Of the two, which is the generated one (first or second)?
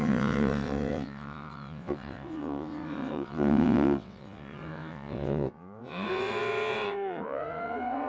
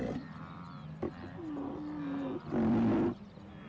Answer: first